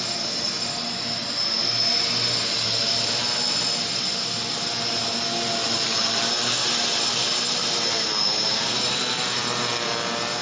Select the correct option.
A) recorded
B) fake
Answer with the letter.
A